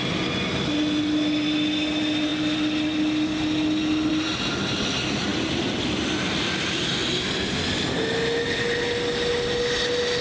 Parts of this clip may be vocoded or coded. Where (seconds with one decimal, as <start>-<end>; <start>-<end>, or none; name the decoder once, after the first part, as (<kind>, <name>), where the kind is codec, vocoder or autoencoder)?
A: 7.0-7.5 (vocoder, BigVGAN v2)